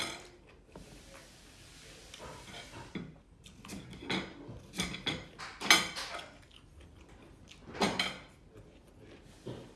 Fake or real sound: real